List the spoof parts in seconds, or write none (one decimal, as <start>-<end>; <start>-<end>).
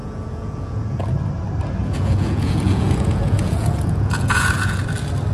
0.0-1.1; 1.8-4.8